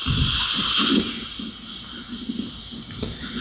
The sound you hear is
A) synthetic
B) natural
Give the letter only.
B